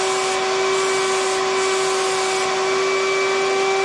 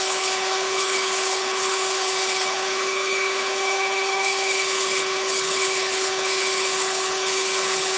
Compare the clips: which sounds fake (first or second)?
second